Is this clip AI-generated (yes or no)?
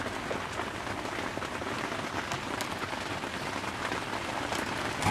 no